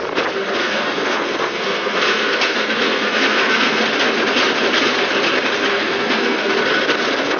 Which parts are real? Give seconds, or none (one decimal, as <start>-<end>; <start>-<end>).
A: 0.0-0.6; 3.8-5.7; 6.5-7.4

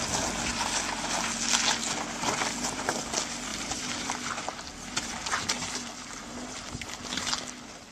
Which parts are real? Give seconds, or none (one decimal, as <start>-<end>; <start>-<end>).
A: 0.0-3.5; 4.1-7.9

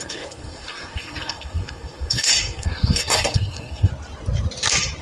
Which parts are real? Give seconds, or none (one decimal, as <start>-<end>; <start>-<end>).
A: 3.9-5.0

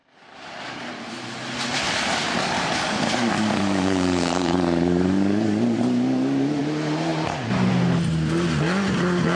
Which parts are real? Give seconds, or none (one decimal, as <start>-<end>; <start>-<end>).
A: 0.9-2.3; 6.6-9.4

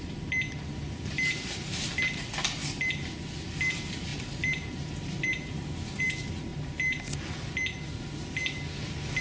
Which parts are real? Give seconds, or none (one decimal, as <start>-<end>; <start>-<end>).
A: 0.0-4.1; 6.0-6.5; 7.0-9.2

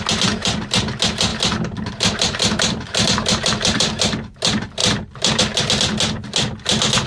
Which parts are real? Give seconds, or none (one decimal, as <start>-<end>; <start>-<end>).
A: 0.0-4.8; 5.4-7.1